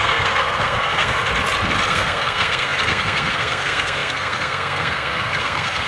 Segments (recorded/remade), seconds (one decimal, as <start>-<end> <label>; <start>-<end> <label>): 0.0-1.2 remade; 1.2-1.9 recorded; 1.9-5.9 remade